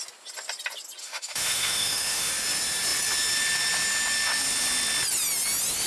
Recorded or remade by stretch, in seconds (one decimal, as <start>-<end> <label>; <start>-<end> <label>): 0.0-1.0 recorded; 1.0-2.3 remade; 2.3-5.9 recorded

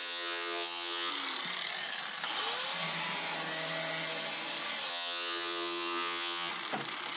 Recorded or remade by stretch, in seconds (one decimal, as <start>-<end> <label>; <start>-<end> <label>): 0.0-1.1 remade; 1.1-4.9 recorded; 4.9-6.5 remade; 6.5-7.2 recorded

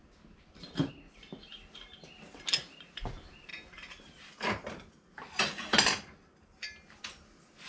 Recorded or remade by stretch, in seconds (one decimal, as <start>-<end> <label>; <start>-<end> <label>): 0.0-7.7 recorded

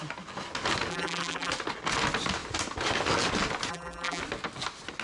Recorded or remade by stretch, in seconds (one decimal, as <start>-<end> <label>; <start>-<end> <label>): 0.0-0.9 recorded; 0.9-1.5 remade; 1.5-3.7 recorded; 3.7-4.2 remade; 4.2-5.0 recorded

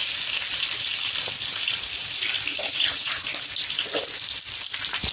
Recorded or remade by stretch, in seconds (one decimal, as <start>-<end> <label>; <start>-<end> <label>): 0.0-2.5 recorded; 2.5-3.5 remade; 3.5-5.1 recorded

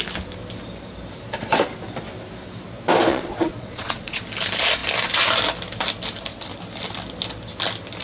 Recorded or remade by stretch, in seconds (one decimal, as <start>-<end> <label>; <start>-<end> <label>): 0.0-3.1 recorded; 3.1-4.2 remade; 4.2-8.0 recorded